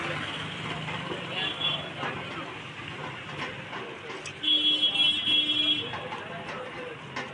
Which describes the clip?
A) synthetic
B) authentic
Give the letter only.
B